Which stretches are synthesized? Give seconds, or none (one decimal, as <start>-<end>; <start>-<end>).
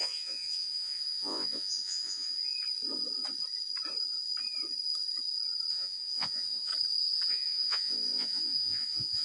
0.0-2.4; 5.7-6.7; 7.3-9.2